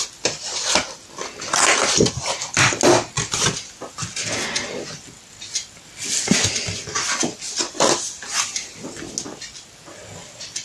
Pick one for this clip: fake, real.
real